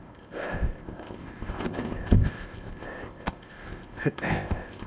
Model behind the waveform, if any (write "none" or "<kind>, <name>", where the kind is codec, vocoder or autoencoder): codec, ZipCodec